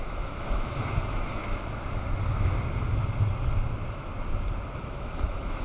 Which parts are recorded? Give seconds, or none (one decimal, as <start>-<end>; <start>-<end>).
1.4-4.8